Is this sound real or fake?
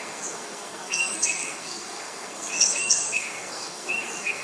fake